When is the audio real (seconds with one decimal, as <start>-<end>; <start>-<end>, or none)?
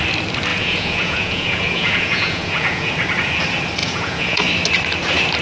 0.0-0.5; 2.9-3.8; 4.4-5.4